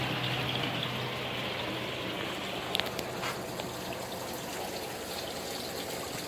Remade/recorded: recorded